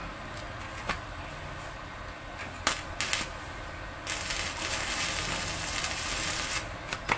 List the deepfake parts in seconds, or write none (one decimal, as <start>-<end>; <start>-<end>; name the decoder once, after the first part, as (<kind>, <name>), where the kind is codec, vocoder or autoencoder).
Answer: none